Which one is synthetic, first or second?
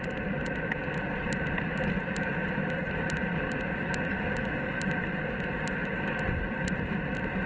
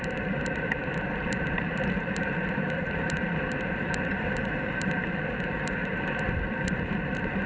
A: second